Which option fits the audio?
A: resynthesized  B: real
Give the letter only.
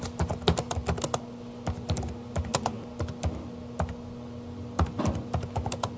B